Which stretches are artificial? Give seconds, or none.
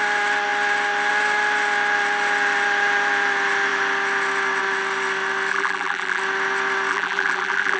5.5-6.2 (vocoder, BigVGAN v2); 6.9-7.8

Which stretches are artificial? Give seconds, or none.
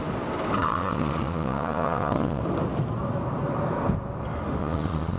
0.6-2.4 (vocoder, Vocos); 4.6-5.2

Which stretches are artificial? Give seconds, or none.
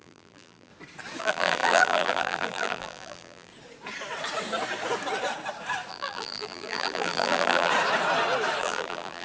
0.0-0.7 (vocoder, BigVGAN v2); 1.2-3.5; 5.9-7.7; 8.6-9.2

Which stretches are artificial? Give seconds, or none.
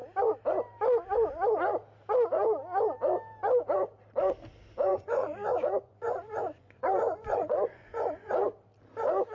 4.9-8.3 (vocoder, Vocos)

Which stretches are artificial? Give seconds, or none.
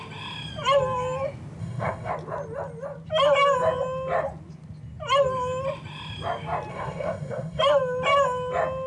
1.6-2.1 (codec, SNAC); 6.7-7.6